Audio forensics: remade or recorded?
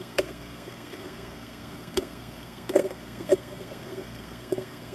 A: remade